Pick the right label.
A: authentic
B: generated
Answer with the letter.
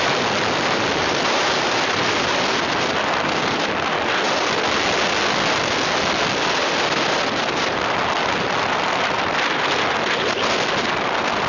A